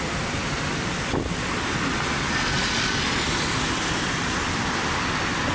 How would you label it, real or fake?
real